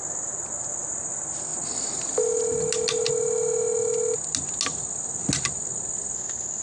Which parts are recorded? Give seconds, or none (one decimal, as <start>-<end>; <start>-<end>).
0.0-6.6

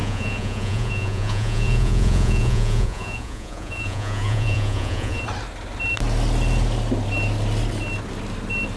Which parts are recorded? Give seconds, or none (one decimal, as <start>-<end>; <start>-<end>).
5.2-8.8

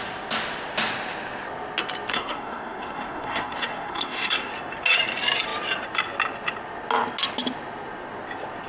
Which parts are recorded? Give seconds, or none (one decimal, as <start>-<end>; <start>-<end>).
0.0-2.1; 4.5-8.7

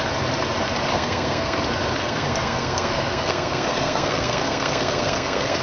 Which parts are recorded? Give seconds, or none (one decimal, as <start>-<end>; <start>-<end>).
0.0-0.9; 1.6-2.0

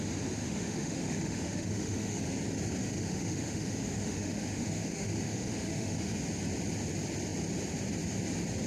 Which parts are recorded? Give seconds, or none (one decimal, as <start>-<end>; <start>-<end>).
0.0-0.4; 2.2-2.8; 6.2-8.7

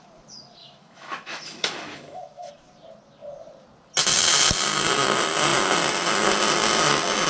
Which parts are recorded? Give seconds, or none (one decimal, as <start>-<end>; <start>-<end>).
0.0-0.6; 2.5-7.3

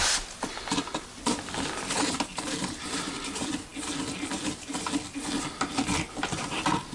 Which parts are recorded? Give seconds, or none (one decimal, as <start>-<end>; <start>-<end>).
0.0-6.9